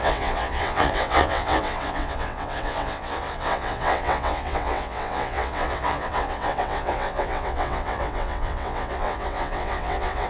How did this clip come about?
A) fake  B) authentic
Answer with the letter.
A